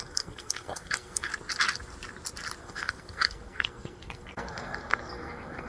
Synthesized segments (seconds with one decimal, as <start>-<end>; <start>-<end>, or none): 0.0-1.3; 2.6-5.7